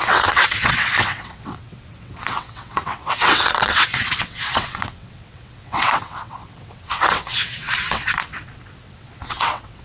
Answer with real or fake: fake